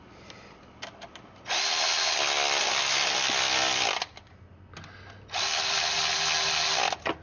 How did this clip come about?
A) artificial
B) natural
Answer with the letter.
B